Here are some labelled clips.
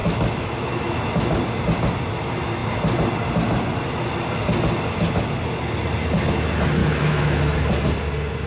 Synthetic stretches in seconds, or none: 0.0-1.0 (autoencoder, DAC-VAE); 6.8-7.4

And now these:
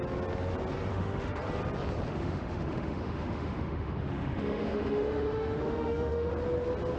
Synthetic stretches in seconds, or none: 0.9-1.4 (autoencoder, DAC-VAE); 2.1-6.3

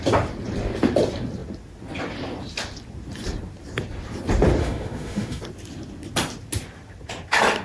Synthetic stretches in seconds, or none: 4.6-5.4 (autoencoder, DAC-VAE)

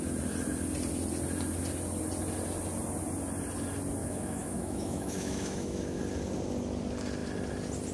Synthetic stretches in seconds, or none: 4.0-6.0 (autoencoder, DAC-VAE)

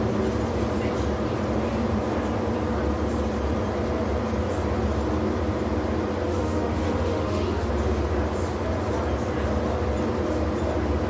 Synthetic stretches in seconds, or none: 6.3-7.7 (autoencoder, DAC-VAE)

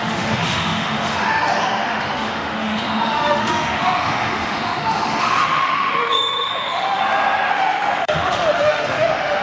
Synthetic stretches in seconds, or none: 0.0-7.0 (autoencoder, DAC-VAE); 7.5-9.4

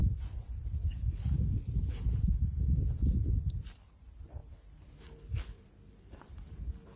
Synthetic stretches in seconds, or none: none